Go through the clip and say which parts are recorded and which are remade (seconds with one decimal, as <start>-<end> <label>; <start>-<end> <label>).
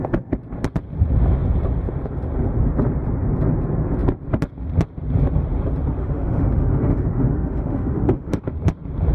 0.0-6.0 recorded; 6.0-8.4 remade; 8.4-9.1 recorded